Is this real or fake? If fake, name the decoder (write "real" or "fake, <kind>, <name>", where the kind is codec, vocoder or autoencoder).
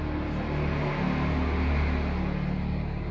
real